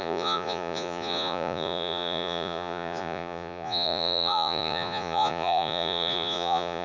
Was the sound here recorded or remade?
remade